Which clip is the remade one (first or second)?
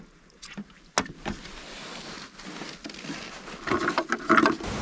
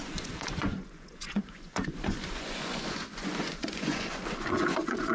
second